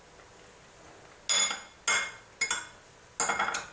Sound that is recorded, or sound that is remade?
recorded